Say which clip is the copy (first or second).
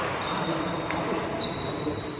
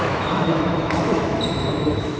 second